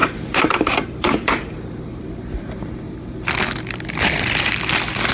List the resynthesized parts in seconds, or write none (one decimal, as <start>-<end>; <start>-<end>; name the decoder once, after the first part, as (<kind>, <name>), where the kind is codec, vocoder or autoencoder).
0.0-3.1 (vocoder, BigVGAN v2)